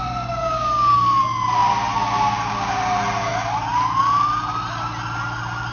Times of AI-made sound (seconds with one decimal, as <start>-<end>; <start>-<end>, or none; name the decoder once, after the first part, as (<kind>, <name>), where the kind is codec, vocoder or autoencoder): 0.4-1.2 (codec, DAC)